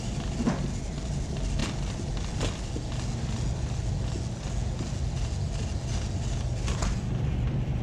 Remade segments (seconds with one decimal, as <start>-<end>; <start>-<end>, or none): none